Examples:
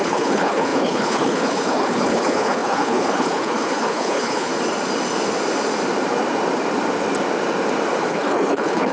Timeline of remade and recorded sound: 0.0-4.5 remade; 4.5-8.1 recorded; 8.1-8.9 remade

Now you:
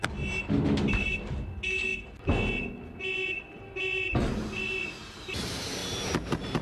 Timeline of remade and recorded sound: 0.0-5.8 recorded; 5.8-6.6 remade

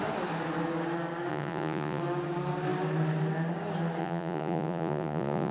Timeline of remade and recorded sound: 0.0-1.3 recorded; 1.3-2.0 remade; 2.0-4.0 recorded; 4.0-5.5 remade